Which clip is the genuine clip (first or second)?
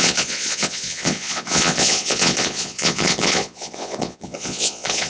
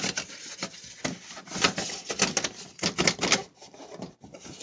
second